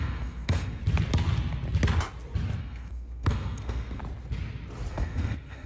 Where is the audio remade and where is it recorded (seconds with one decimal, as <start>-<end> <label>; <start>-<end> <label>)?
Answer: 0.0-0.8 remade; 0.8-2.6 recorded; 2.6-4.0 remade; 4.0-4.9 recorded; 4.9-5.7 remade